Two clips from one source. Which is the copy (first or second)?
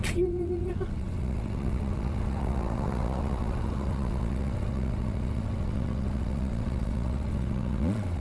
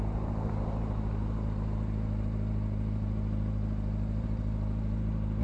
first